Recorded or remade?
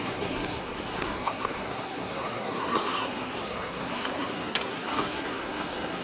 remade